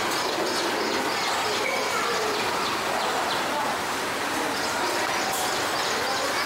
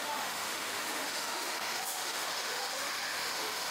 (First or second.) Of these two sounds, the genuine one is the first